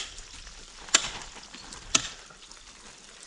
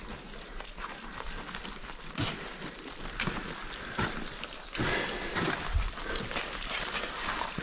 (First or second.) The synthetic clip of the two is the first